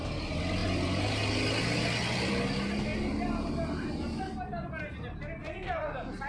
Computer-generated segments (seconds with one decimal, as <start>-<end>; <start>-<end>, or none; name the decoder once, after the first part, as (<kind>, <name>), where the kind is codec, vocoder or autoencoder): none